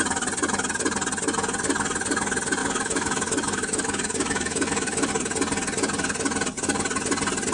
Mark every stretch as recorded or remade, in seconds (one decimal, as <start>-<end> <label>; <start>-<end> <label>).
0.0-2.6 recorded; 2.6-5.1 remade; 5.1-7.5 recorded